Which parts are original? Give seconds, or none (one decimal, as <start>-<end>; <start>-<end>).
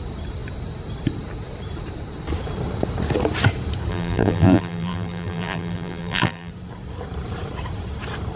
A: 0.0-3.9; 6.5-8.4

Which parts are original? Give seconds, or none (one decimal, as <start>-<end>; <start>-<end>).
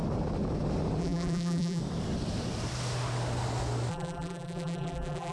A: 0.0-1.0; 1.8-3.9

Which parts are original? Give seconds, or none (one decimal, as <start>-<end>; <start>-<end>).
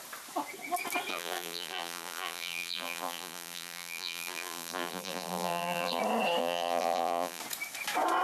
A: 0.0-1.1; 6.0-6.4; 7.4-8.2